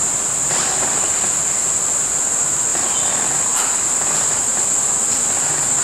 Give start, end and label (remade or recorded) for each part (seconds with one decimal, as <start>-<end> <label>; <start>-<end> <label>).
0.0-0.4 recorded; 0.4-1.2 remade; 1.2-5.8 recorded

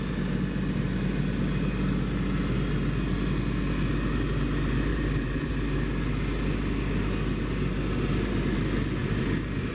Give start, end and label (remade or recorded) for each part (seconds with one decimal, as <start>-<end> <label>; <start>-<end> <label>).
0.0-4.9 recorded; 4.9-5.5 remade; 5.5-9.0 recorded; 9.0-9.7 remade

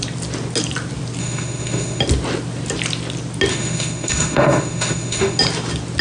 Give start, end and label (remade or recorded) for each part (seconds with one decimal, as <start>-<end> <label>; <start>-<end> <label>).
0.0-1.2 recorded; 1.2-2.0 remade; 2.0-3.5 recorded; 3.5-5.4 remade; 5.4-6.0 recorded

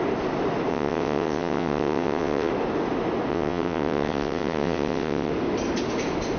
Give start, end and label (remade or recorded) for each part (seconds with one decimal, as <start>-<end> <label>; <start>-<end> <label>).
0.0-0.7 recorded; 0.7-2.5 remade; 2.5-3.3 recorded; 3.3-5.3 remade; 5.3-6.4 recorded